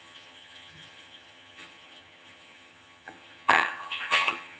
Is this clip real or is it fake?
fake